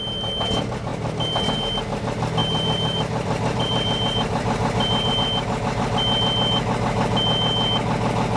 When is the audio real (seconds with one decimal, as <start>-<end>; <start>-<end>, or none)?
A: 0.0-2.4; 5.1-8.4